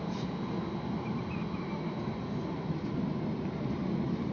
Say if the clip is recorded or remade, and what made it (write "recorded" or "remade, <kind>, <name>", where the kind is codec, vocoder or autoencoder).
recorded